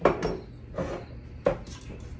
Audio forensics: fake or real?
real